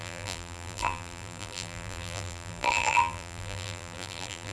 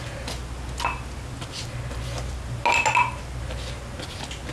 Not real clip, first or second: first